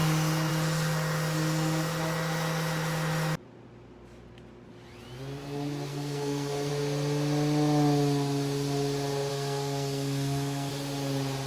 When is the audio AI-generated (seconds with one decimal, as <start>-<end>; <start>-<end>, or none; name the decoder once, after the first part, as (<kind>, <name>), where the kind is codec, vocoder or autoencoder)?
5.9-6.7 (codec, SNAC); 9.3-10.7